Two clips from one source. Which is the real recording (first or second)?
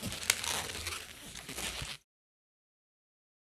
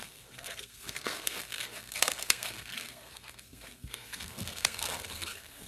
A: first